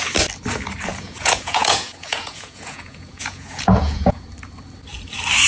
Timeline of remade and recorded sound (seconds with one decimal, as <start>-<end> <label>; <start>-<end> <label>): 0.0-0.9 recorded; 0.9-4.2 remade; 4.2-5.5 recorded